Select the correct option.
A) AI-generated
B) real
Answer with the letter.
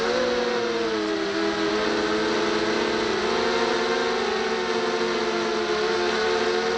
B